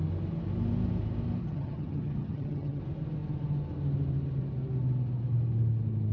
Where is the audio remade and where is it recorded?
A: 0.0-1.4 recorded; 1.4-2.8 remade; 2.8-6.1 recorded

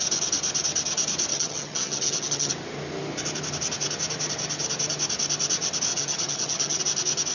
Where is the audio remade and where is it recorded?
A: 0.0-1.3 recorded; 1.3-2.5 remade; 2.5-5.9 recorded; 5.9-6.8 remade; 6.8-7.3 recorded

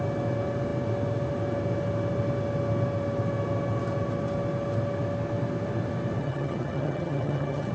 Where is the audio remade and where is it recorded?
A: 0.0-6.2 recorded; 6.2-7.7 remade